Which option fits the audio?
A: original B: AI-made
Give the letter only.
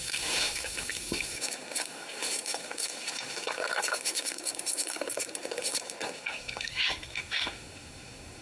B